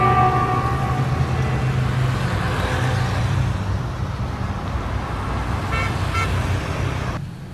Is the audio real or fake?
real